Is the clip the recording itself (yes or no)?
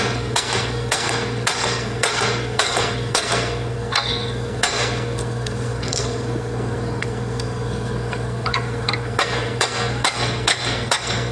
no